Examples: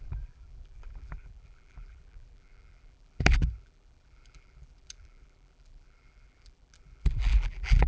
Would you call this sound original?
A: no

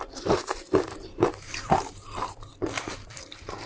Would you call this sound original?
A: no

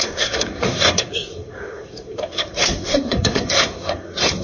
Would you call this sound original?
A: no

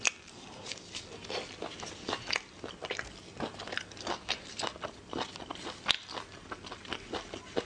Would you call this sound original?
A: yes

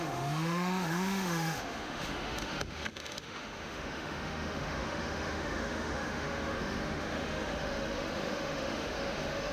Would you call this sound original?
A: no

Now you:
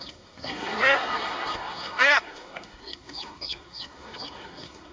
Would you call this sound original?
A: no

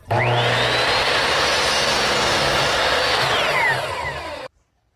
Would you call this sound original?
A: yes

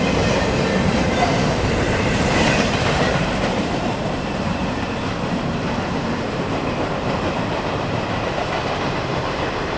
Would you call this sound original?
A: no